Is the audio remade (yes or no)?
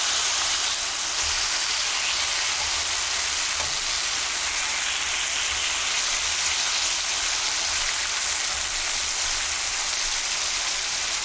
no